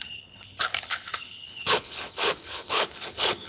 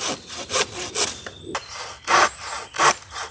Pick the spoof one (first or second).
first